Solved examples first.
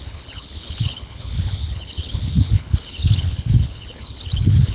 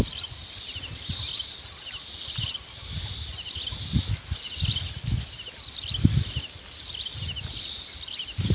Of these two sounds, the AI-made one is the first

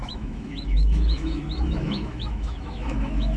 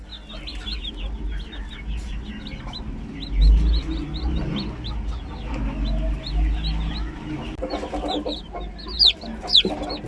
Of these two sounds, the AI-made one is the first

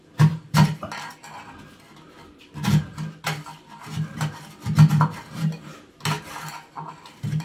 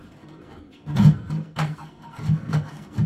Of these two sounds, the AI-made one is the second